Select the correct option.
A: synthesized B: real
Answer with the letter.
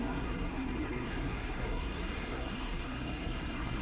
A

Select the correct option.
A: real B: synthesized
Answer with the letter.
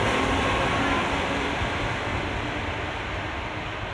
A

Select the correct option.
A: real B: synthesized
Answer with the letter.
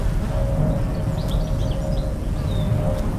A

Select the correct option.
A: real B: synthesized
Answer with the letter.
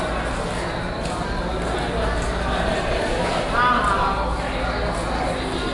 A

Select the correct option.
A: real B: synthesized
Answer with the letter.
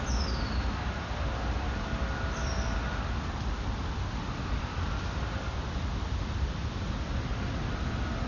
A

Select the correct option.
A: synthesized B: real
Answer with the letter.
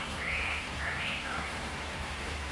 A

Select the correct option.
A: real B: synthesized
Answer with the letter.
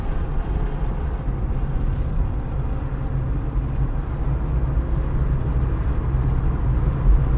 A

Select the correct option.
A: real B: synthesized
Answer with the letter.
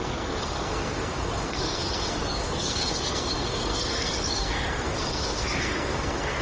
B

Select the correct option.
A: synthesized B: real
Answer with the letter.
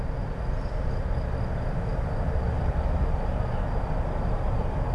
B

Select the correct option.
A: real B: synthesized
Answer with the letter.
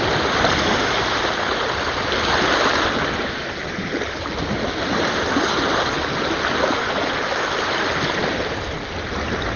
A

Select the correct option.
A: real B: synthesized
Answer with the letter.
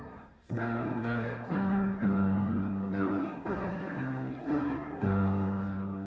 B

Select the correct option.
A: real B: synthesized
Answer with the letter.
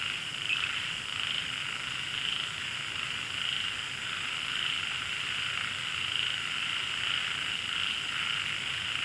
A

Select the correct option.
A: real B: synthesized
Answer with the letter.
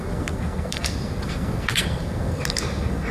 B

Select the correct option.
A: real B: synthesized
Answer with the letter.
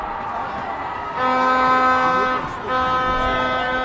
A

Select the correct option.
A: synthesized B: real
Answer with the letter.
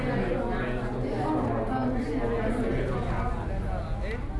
B